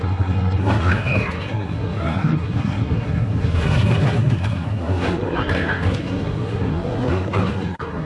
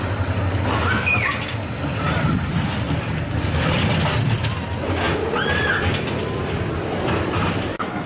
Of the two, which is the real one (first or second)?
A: second